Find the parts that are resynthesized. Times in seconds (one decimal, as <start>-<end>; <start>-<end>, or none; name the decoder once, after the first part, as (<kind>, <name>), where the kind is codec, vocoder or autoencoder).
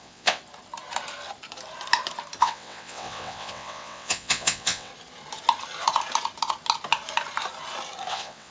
0.0-0.4 (vocoder, WaveNeXt); 2.4-4.9; 8.1-8.5